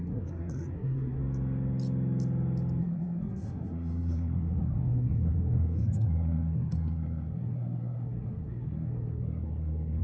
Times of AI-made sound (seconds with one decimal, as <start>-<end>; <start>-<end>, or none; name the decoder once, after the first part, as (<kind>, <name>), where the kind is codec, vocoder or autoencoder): 0.0-1.2 (codec, SNAC); 2.8-10.0